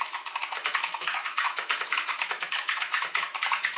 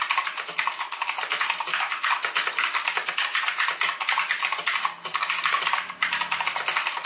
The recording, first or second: second